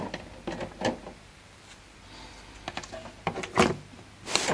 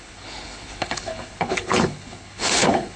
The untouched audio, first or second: first